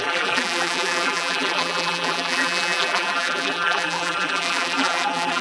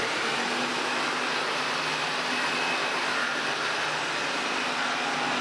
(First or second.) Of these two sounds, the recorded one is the second